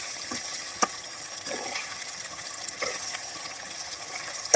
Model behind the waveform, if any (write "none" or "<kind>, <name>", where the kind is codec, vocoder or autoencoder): vocoder, HiFi-GAN